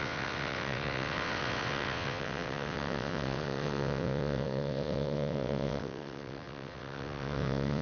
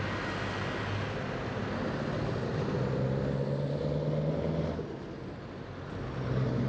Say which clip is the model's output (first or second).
first